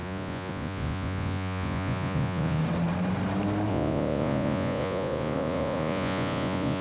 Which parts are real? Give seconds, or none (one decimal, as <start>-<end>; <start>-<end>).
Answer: 2.6-3.7